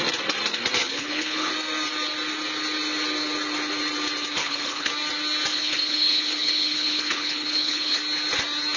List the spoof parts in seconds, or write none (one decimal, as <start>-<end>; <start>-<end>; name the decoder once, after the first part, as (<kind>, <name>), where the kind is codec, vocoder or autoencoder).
0.8-1.5 (codec, HILCodec); 4.4-4.9; 5.5-8.0